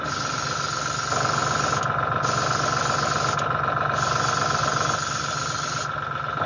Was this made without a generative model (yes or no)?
yes